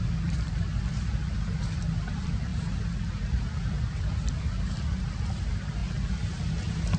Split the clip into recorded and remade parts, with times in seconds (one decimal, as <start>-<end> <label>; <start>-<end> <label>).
0.0-2.5 remade; 2.5-3.4 recorded; 3.4-5.8 remade; 5.8-7.0 recorded